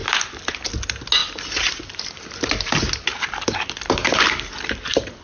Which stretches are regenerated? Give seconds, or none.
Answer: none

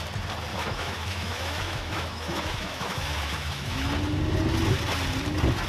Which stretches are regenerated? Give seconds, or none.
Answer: 0.5-3.9 (autoencoder, DAC-VAE)

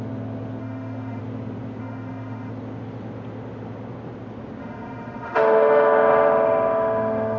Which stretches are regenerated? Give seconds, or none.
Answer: 0.6-1.2 (autoencoder, DAC-VAE); 1.8-2.5; 4.6-7.4

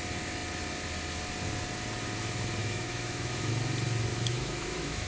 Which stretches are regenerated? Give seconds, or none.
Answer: 2.6-3.5 (autoencoder, DAC-VAE); 4.1-5.1

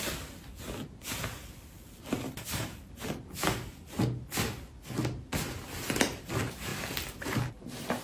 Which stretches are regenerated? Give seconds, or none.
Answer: none

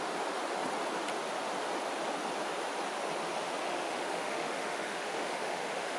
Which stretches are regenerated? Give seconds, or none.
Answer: 3.7-6.0 (autoencoder, DAC-VAE)

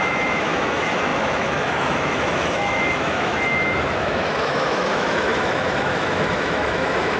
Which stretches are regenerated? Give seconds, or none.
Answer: 0.0-7.2 (autoencoder, DAC-VAE)